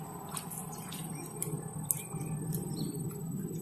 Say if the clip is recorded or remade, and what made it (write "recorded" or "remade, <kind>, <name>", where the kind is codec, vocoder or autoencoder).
recorded